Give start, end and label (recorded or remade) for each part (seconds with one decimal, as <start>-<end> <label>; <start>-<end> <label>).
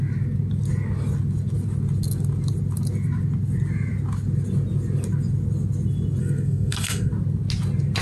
0.0-6.2 recorded; 6.2-7.1 remade; 7.1-8.0 recorded